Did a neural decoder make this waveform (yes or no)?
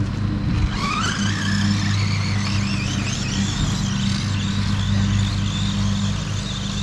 no